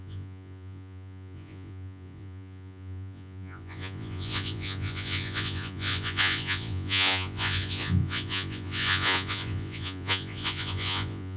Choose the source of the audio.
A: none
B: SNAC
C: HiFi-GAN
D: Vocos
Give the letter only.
D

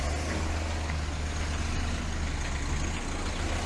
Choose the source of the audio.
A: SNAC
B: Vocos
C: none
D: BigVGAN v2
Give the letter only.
C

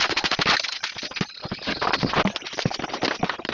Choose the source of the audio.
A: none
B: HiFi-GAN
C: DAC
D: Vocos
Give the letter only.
A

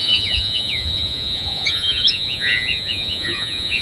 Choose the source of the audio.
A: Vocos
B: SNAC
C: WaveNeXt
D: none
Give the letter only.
A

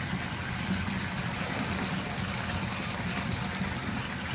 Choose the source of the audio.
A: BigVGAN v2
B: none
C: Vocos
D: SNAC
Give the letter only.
B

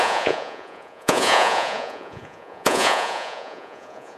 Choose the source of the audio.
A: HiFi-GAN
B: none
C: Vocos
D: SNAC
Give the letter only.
C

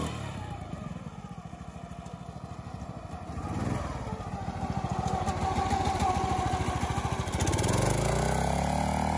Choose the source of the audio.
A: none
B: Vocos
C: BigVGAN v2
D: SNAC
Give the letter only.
A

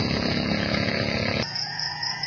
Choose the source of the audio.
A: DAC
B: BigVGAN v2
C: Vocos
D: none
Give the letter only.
C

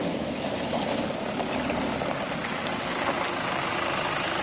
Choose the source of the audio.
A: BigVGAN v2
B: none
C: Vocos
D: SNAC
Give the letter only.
B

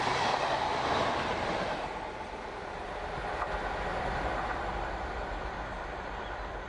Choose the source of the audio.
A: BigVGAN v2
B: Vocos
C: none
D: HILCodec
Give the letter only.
C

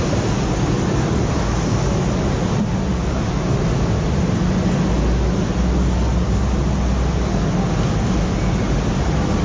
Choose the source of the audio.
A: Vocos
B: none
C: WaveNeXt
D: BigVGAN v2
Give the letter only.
B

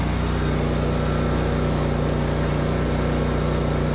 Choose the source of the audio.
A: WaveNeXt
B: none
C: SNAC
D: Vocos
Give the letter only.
B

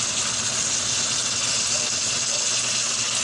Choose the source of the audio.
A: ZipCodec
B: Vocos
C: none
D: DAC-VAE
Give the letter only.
C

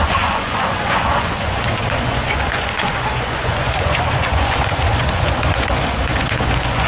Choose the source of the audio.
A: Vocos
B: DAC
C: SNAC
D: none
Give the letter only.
A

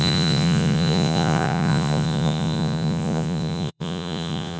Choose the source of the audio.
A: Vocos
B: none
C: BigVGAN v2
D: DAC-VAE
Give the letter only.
A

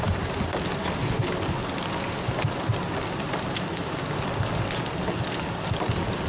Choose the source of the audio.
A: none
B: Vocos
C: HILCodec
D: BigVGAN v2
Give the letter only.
A